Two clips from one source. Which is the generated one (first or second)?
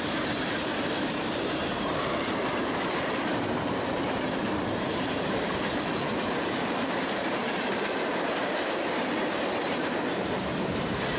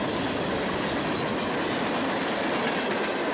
first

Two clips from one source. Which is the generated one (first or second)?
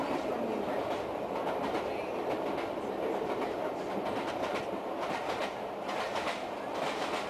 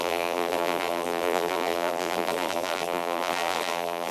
second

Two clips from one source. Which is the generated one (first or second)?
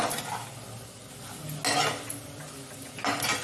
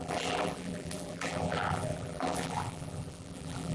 second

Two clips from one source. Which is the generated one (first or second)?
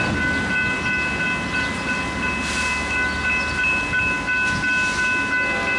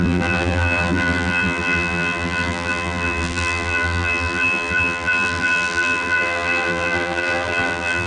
second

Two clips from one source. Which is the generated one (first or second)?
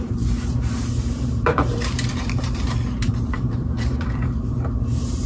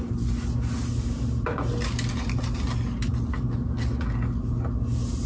first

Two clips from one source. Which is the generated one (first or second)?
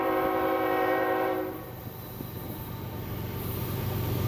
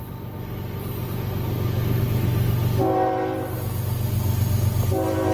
first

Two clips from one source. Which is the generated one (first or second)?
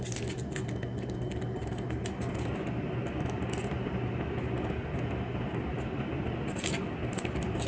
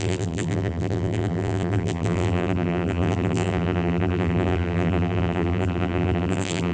second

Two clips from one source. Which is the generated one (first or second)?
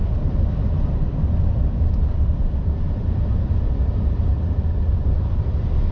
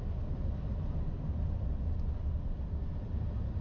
first